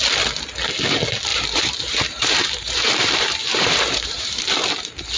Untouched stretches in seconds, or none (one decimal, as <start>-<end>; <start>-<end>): 0.0-1.3; 4.4-5.2